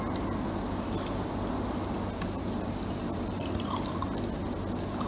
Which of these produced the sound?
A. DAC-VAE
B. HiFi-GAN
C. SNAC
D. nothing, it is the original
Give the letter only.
D